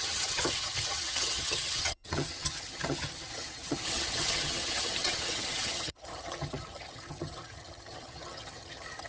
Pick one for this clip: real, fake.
fake